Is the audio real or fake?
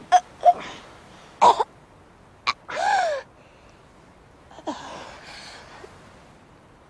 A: real